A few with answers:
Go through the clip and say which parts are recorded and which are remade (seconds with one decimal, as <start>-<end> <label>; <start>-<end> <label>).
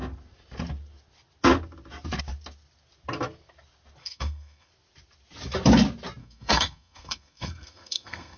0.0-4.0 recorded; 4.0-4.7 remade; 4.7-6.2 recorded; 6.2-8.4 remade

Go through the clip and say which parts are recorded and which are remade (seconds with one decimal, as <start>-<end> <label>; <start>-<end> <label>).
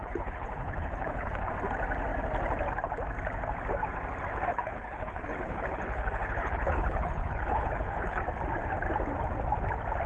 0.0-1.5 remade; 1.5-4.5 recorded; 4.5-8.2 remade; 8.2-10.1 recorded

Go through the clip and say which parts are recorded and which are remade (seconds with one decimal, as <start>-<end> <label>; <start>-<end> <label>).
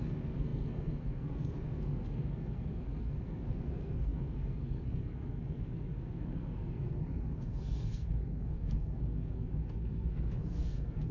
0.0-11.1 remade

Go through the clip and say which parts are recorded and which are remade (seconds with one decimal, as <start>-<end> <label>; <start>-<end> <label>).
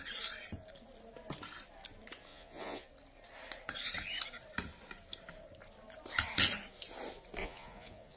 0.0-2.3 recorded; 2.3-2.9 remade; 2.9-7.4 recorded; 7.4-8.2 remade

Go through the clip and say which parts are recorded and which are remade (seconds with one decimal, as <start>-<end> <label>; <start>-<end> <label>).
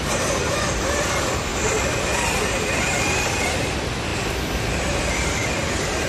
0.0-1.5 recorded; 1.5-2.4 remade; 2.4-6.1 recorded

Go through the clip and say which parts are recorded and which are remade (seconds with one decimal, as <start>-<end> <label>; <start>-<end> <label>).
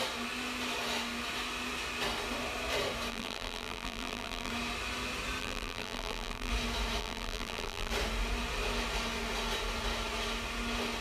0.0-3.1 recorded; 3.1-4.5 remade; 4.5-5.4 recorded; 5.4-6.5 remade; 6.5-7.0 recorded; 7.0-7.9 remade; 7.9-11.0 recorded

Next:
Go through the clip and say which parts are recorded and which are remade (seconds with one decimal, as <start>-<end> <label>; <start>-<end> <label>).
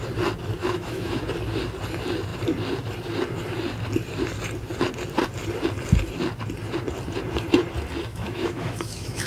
0.0-0.6 recorded; 0.6-1.2 remade; 1.2-8.1 recorded; 8.1-9.3 remade